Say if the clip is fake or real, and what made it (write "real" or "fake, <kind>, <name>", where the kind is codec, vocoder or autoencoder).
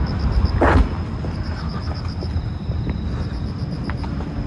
real